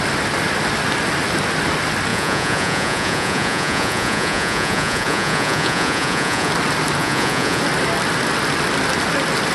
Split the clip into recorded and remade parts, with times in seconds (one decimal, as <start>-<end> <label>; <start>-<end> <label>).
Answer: 0.0-2.1 recorded; 2.1-6.5 remade; 6.5-7.0 recorded; 7.0-7.6 remade; 7.6-9.5 recorded